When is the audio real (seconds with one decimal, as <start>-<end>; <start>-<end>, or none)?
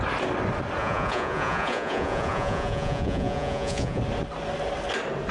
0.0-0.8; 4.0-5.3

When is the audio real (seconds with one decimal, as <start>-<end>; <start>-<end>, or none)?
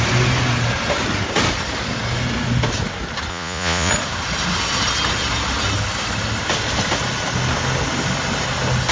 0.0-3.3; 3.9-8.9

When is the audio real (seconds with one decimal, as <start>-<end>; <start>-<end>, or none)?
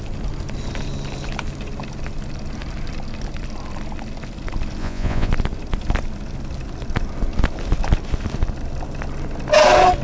0.0-4.8; 5.3-10.0